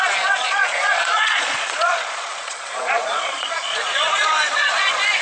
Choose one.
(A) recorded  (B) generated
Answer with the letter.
B